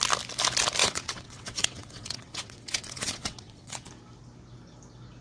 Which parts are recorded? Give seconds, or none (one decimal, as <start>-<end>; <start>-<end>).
0.0-0.8; 3.9-5.2